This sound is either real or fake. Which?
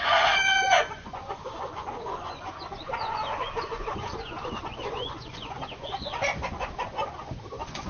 fake